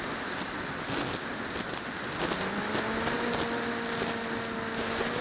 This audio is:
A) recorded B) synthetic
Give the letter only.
A